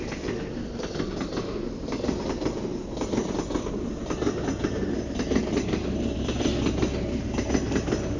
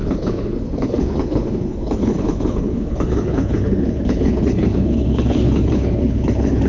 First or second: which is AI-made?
second